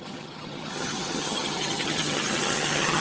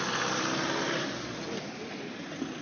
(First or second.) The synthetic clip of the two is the first